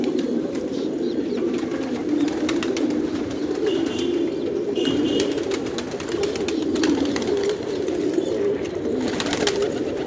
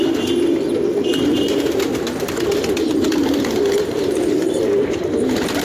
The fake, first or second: first